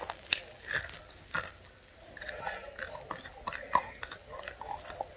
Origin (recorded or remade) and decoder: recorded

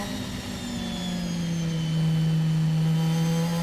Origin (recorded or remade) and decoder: recorded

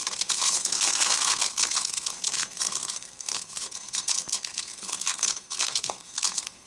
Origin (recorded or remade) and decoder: remade, codec, SNAC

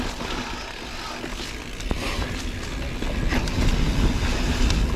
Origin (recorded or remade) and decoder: recorded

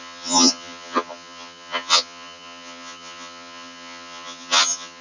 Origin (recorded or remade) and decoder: remade, vocoder, HiFi-GAN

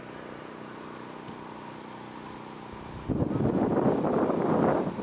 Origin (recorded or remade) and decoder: recorded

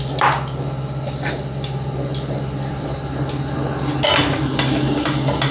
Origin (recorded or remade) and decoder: recorded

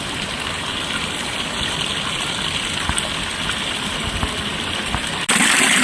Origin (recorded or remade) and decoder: recorded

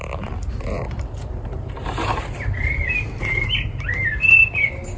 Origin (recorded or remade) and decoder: remade, vocoder, BigVGAN v2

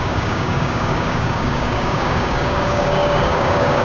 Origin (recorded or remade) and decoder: remade, codec, DAC